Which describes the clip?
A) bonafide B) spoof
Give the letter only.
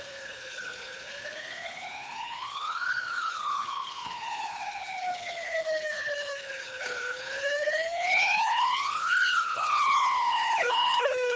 B